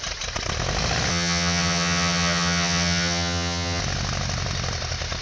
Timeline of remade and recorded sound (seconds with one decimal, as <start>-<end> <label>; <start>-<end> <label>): 0.0-1.1 recorded; 1.1-3.8 remade; 3.8-5.2 recorded